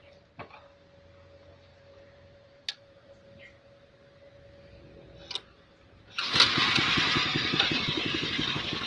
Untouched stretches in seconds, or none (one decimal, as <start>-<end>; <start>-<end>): 0.0-1.7; 3.1-7.3; 8.3-8.9